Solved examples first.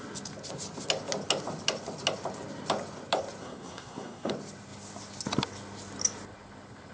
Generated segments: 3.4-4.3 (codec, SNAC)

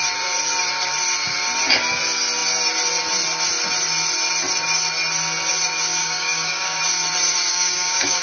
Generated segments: 6.0-6.8 (codec, DAC); 7.5-8.2